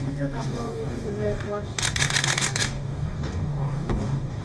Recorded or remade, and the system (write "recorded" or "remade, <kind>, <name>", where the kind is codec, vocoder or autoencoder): remade, codec, DAC